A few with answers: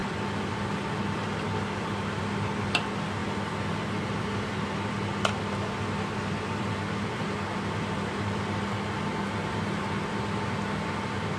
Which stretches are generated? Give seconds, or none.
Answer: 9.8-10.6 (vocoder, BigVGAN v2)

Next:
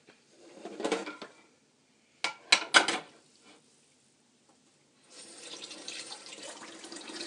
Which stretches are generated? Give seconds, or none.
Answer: 0.0-1.0 (vocoder, BigVGAN v2); 5.1-6.3

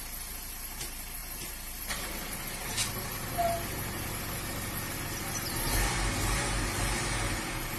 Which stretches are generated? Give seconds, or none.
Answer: none

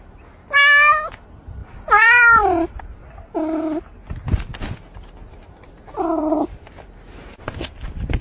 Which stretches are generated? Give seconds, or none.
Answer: 1.6-2.8 (vocoder, BigVGAN v2); 6.2-6.8

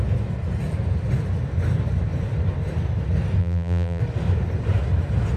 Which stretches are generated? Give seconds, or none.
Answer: 3.4-4.0 (vocoder, BigVGAN v2)

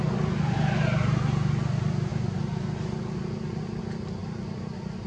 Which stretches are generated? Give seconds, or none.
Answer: none

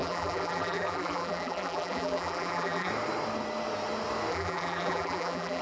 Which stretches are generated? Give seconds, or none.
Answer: 0.0-2.9 (vocoder, BigVGAN v2); 4.3-5.6